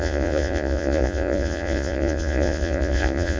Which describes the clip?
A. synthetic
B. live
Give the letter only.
A